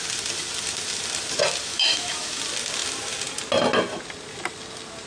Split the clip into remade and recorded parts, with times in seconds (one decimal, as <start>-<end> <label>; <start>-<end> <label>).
0.0-1.7 recorded; 1.7-2.4 remade; 2.4-5.1 recorded